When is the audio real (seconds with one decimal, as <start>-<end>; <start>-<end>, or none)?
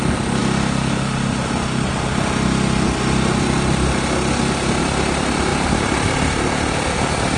0.0-7.4